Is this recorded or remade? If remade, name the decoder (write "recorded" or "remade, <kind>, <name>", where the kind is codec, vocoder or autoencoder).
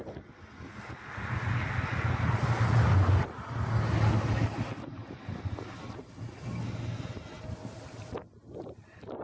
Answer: recorded